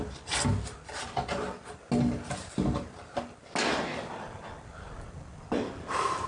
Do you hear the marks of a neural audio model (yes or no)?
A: no